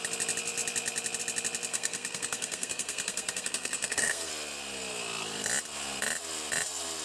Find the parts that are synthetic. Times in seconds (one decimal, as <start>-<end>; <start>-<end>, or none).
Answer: 1.7-4.3